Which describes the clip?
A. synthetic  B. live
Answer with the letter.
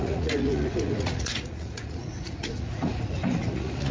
A